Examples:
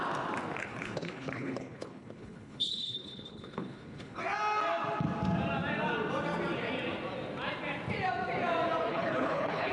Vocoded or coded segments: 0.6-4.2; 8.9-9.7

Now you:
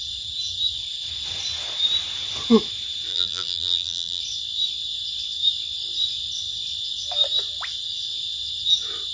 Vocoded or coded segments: 3.1-4.2

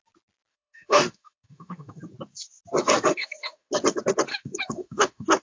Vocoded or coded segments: 0.5-2.0; 3.1-3.7; 4.3-5.4

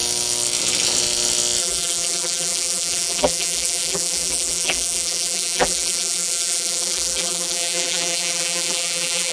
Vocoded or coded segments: 1.6-9.3

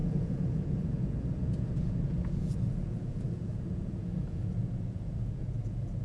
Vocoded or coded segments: 0.0-6.0

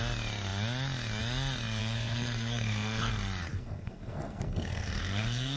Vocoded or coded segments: 1.8-3.1; 3.5-5.6

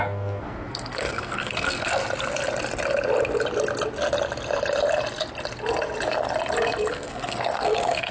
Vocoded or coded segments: 0.0-2.0; 6.9-8.1